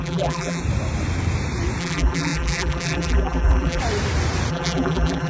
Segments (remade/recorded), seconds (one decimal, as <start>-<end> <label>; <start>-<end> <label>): 0.0-0.6 remade; 0.6-1.8 recorded; 1.8-3.8 remade; 3.8-4.5 recorded; 4.5-5.3 remade